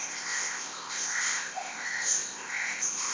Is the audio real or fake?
fake